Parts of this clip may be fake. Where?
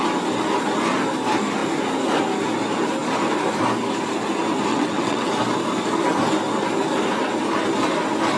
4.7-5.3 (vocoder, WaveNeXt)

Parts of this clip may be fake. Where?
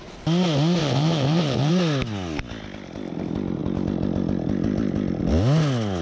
0.8-1.7 (vocoder, WaveNeXt)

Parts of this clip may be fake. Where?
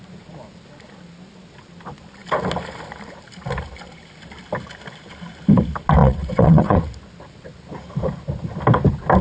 6.0-6.8 (vocoder, WaveNeXt)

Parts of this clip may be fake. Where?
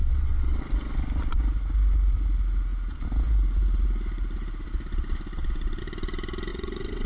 0.0-0.6 (vocoder, WaveNeXt); 6.5-7.1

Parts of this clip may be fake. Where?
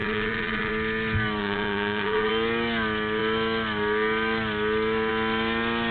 0.0-0.7 (vocoder, WaveNeXt); 1.4-2.3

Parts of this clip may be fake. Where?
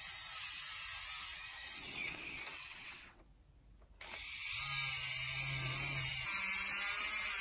1.3-3.2 (vocoder, WaveNeXt)